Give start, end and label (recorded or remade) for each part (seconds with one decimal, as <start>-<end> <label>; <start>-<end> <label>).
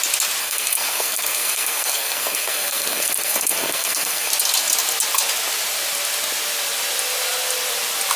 0.0-0.4 recorded; 0.4-4.3 remade; 4.3-8.2 recorded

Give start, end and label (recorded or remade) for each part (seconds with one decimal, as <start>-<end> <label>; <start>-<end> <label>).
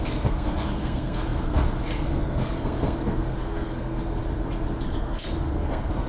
0.0-4.2 remade; 4.2-4.8 recorded; 4.8-6.1 remade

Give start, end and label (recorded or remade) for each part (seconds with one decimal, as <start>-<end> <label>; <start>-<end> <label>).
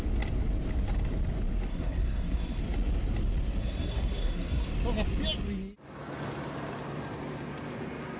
0.0-1.7 recorded; 1.7-2.6 remade; 2.6-3.6 recorded; 3.6-4.7 remade; 4.7-8.2 recorded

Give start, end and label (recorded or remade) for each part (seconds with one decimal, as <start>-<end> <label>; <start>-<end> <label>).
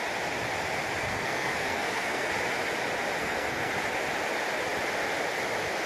0.0-1.0 recorded; 1.0-2.3 remade; 2.3-3.2 recorded; 3.2-3.7 remade; 3.7-5.9 recorded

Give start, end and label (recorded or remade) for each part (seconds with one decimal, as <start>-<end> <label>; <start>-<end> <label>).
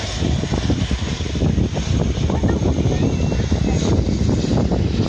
0.0-5.1 recorded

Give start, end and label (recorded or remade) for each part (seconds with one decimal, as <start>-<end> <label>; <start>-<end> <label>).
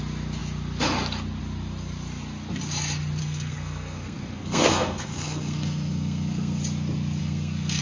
0.0-3.2 recorded; 3.2-6.6 remade; 6.6-7.2 recorded; 7.2-7.8 remade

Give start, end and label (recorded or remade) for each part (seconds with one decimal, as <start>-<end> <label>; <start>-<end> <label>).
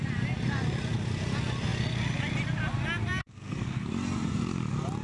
0.0-3.2 recorded; 3.2-3.9 remade; 3.9-5.0 recorded